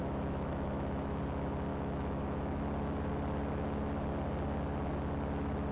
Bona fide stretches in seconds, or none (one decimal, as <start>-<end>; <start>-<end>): 1.2-1.7; 2.6-5.7